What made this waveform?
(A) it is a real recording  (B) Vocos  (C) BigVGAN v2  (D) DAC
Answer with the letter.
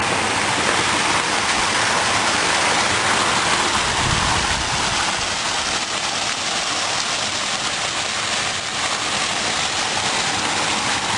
A